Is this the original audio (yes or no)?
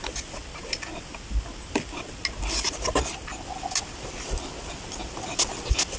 yes